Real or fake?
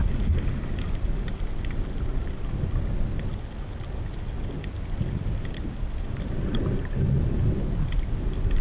real